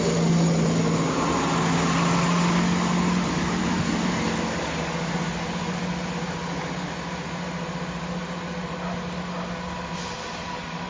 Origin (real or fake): real